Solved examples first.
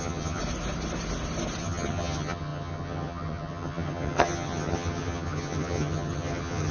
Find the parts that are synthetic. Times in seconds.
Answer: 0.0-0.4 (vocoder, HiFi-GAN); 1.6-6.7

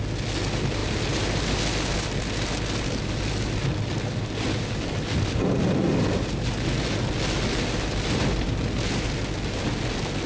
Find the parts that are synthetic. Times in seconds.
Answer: none

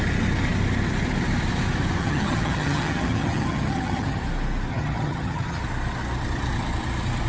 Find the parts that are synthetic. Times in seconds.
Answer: 2.0-4.2 (vocoder, HiFi-GAN); 4.7-5.6

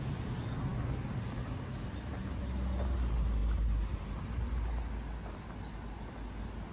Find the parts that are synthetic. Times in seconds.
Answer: none